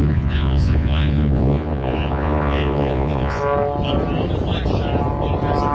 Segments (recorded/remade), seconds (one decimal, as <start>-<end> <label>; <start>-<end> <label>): 0.0-3.4 remade; 3.4-5.7 recorded